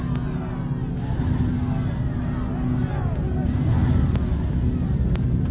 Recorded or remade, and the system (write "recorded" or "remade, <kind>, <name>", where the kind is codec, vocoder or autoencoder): recorded